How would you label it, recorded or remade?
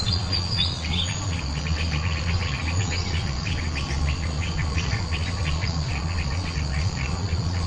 remade